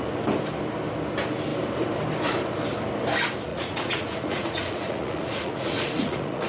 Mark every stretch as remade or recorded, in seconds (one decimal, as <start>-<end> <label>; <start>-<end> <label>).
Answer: 0.0-3.5 recorded; 3.5-6.5 remade